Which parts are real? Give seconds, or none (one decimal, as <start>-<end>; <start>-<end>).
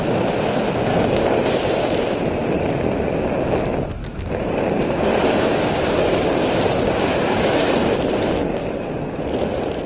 0.0-0.9; 1.5-4.0; 7.8-8.4; 9.2-9.9